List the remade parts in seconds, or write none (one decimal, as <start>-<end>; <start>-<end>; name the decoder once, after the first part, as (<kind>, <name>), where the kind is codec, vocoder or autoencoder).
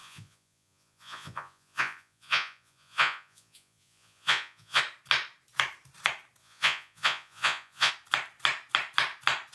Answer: 0.0-4.8 (vocoder, Vocos); 6.4-7.9